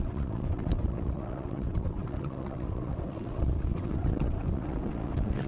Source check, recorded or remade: remade